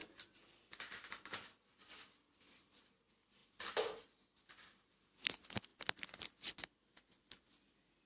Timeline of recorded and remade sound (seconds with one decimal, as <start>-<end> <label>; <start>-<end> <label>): 0.0-0.8 remade; 0.8-8.1 recorded